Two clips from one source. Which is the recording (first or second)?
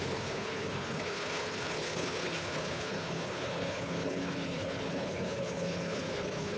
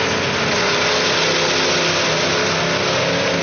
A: second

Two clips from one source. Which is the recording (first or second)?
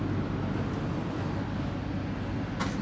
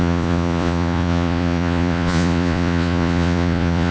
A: first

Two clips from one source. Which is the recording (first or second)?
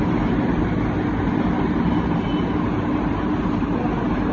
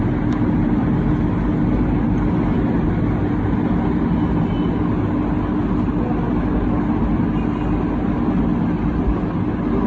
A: second